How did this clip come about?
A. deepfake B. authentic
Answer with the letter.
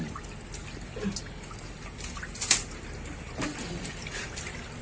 B